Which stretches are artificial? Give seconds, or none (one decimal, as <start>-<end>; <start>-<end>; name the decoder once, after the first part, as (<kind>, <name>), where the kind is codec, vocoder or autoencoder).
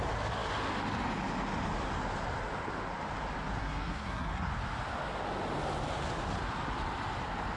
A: 3.6-4.5 (codec, SNAC)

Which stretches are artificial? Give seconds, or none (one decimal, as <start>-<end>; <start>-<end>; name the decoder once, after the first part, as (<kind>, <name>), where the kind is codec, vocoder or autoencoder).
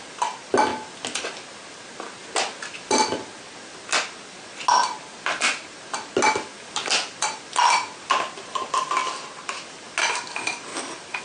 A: none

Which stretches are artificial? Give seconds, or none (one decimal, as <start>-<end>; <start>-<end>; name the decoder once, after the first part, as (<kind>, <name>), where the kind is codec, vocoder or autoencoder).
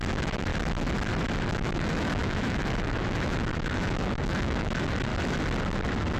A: 0.0-0.5 (autoencoder, DAC-VAE); 1.5-5.1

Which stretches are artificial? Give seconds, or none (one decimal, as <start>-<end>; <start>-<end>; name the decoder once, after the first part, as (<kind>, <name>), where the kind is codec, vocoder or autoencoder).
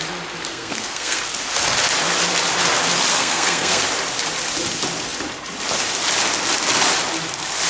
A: 0.5-1.2 (codec, SNAC); 3.1-3.8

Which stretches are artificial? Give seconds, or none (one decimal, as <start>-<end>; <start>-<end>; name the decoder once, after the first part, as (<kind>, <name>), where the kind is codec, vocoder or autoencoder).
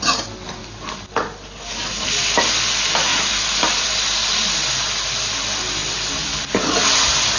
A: none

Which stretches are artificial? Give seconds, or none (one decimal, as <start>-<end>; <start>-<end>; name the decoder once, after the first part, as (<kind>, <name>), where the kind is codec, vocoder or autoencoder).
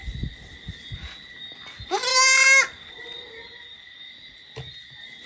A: none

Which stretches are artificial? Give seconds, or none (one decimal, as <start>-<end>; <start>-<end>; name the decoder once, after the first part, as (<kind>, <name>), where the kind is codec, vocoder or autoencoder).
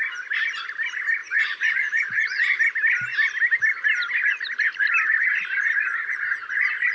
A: 1.2-2.6 (vocoder, Vocos); 5.9-6.5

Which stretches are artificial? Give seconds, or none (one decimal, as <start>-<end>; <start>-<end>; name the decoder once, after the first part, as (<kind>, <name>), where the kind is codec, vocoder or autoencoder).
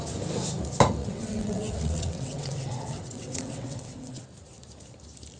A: 1.0-4.2 (vocoder, WaveNeXt)